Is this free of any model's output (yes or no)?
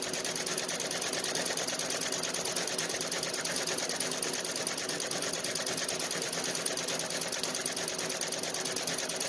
yes